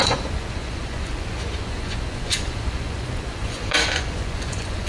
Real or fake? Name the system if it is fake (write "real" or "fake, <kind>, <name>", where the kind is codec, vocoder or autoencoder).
fake, vocoder, Vocos